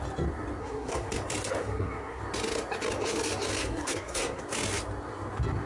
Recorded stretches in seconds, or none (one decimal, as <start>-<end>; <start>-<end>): 0.0-0.6; 1.1-1.6; 2.2-3.6; 4.4-5.7